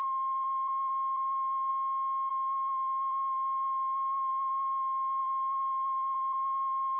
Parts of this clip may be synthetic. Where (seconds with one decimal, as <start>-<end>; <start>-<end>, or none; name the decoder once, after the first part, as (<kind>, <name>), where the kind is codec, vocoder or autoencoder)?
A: 0.0-1.7 (vocoder, BigVGAN v2); 2.3-7.0